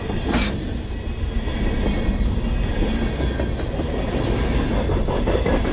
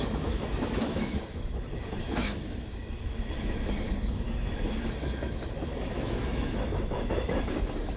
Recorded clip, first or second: first